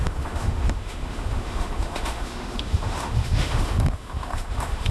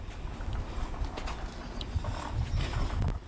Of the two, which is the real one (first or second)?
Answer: second